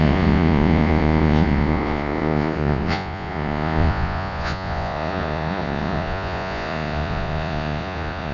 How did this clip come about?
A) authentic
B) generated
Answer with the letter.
B